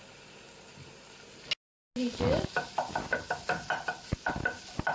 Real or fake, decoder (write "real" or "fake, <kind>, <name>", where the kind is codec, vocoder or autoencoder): real